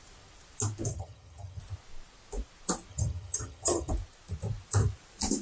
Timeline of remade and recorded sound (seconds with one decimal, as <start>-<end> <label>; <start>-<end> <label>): 0.0-0.9 recorded; 0.9-1.6 remade; 1.6-2.9 recorded; 2.9-3.9 remade; 3.9-5.4 recorded